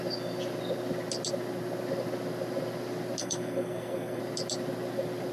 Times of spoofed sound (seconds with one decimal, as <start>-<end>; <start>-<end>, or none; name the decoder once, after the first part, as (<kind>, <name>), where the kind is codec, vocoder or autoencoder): 3.2-4.2 (codec, SNAC)